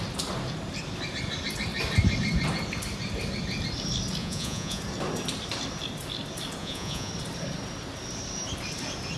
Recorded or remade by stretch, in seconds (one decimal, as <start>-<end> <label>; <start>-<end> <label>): 0.0-4.2 recorded; 4.2-4.8 remade; 4.8-6.6 recorded; 6.6-7.1 remade; 7.1-9.2 recorded